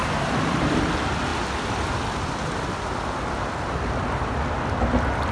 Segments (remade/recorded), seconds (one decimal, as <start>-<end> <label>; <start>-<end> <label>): 0.0-1.3 recorded; 1.3-4.5 remade; 4.5-5.3 recorded